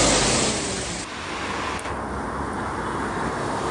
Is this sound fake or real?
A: real